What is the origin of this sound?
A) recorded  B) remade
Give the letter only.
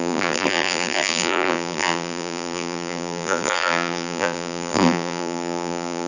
B